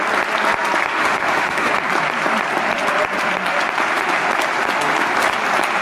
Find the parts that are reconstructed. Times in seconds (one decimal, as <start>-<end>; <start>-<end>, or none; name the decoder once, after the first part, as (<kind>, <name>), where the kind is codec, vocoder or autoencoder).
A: 0.9-1.7 (autoencoder, DAC-VAE)